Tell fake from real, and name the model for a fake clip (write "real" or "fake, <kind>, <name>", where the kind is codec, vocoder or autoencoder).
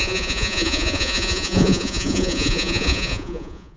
fake, vocoder, Vocos